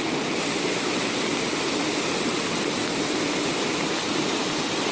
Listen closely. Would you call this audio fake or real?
real